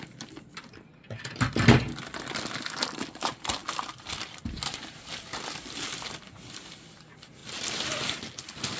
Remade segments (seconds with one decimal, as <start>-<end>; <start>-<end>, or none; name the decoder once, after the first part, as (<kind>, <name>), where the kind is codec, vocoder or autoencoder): 0.0-0.9 (vocoder, BigVGAN v2); 1.8-8.8